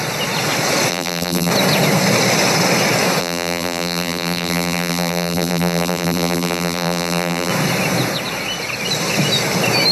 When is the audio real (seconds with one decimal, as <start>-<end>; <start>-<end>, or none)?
0.0-0.9; 1.5-3.2; 7.5-9.9